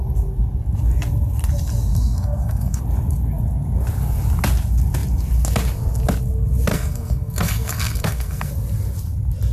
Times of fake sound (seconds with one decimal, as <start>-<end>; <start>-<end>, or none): 1.9-2.8; 6.7-8.5